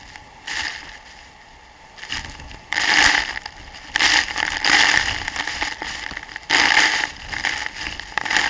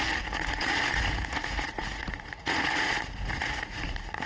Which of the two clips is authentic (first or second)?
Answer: first